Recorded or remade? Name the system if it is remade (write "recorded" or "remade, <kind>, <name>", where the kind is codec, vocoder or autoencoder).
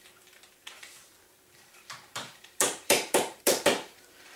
remade, vocoder, BigVGAN v2